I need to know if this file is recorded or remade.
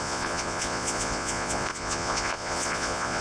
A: remade